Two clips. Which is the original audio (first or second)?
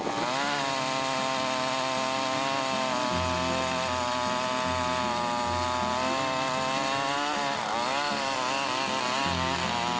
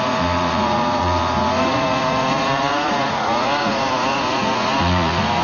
first